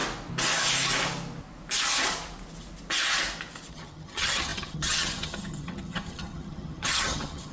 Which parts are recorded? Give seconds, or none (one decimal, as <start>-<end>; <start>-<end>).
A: 0.0-3.7